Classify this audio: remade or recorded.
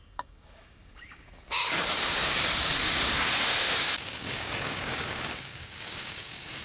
remade